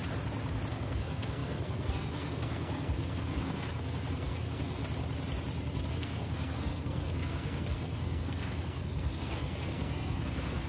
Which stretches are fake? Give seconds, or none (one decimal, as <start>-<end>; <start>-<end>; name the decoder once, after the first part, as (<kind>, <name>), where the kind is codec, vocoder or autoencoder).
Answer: 0.7-4.8 (codec, SNAC); 5.9-10.7